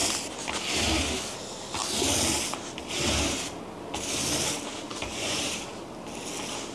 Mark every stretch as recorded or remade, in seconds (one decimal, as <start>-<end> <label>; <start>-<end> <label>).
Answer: 0.0-4.9 recorded; 4.9-5.4 remade; 5.4-6.7 recorded